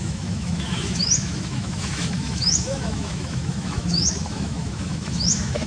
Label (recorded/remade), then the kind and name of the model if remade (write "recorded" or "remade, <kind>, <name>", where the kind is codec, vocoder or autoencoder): remade, autoencoder, DAC-VAE